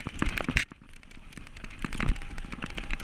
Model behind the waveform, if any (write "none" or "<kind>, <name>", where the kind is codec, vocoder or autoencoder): none